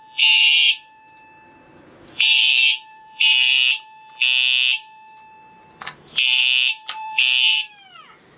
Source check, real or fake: fake